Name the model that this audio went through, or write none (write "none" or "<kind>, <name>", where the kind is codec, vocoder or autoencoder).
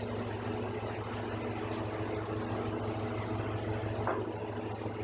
none